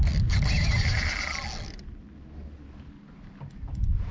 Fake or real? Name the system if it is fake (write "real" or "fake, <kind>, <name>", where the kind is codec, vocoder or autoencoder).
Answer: real